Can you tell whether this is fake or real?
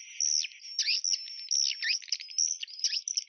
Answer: real